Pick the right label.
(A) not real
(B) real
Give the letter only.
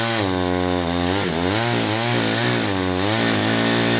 B